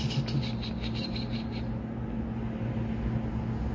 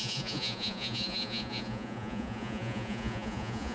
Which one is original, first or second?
first